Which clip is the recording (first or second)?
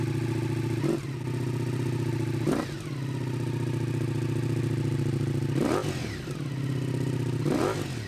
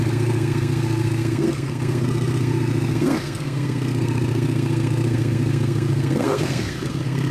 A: first